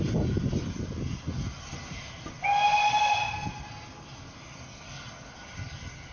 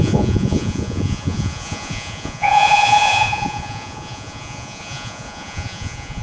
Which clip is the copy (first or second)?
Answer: second